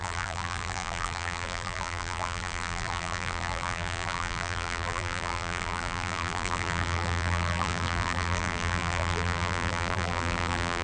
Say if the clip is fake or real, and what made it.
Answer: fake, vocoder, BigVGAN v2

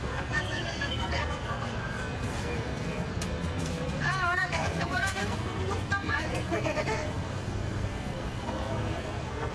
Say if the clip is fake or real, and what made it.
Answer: fake, codec, SNAC